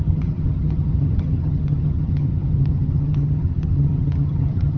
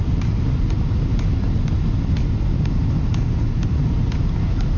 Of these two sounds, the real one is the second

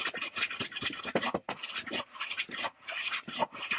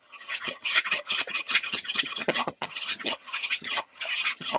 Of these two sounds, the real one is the first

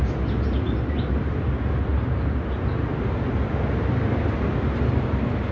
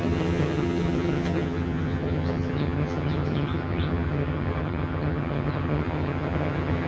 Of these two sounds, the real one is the first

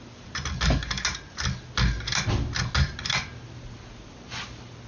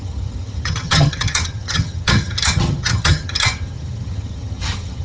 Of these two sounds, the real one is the first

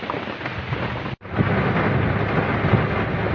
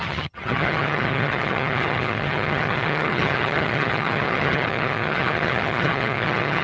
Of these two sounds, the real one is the first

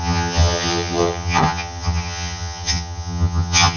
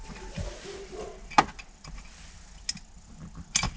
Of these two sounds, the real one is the second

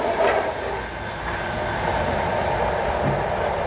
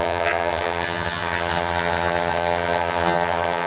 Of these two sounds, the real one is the first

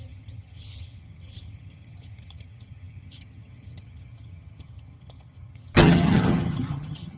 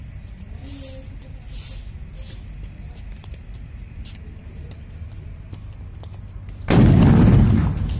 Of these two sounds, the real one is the second